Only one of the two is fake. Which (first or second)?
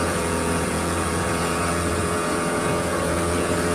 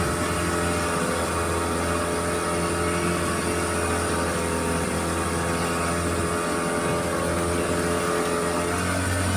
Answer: first